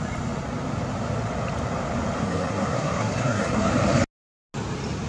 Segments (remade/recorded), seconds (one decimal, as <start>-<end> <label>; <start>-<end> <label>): 0.0-2.2 recorded; 2.2-3.7 remade; 3.7-5.1 recorded